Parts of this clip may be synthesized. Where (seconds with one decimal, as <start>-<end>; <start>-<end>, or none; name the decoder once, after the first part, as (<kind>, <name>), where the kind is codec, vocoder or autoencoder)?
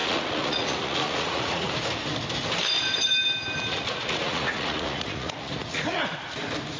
0.0-1.7 (vocoder, Vocos); 3.7-6.3